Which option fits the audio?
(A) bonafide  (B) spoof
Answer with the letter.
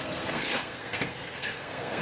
B